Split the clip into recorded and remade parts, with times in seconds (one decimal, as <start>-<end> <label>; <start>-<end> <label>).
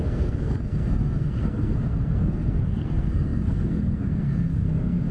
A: 0.0-5.1 remade